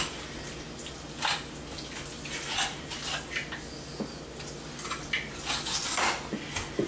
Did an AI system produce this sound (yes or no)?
no